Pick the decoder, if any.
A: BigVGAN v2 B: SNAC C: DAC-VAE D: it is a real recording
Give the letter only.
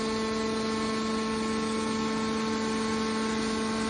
D